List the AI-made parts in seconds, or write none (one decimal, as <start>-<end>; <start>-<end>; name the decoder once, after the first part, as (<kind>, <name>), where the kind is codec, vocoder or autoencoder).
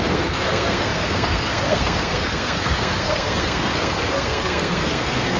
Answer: 0.0-5.4 (codec, SNAC)